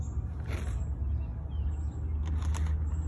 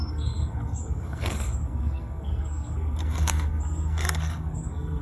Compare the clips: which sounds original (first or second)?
first